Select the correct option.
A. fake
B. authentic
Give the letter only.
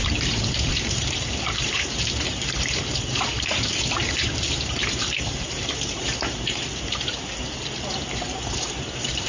A